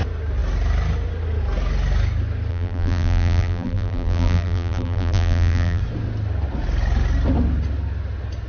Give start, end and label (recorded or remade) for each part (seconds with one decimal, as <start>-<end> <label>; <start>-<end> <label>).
0.0-2.5 recorded; 2.5-5.8 remade; 5.8-8.5 recorded